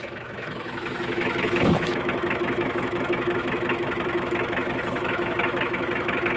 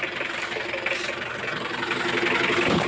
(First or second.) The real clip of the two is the second